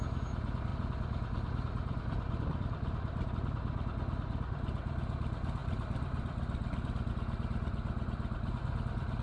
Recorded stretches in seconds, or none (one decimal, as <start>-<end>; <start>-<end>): 0.0-0.7; 3.3-5.6; 7.1-9.2